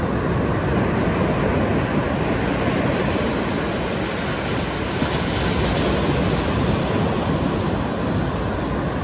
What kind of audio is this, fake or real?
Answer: real